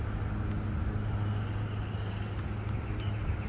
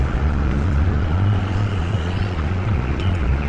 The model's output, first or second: second